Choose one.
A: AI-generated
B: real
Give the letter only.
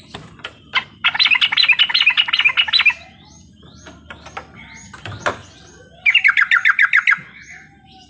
B